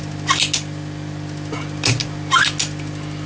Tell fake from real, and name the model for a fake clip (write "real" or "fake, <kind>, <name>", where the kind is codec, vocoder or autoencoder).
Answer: real